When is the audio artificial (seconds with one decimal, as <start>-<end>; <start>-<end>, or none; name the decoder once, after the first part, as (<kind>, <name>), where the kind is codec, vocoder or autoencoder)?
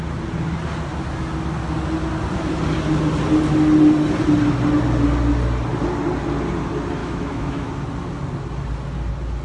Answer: 7.0-7.7 (autoencoder, DAC-VAE)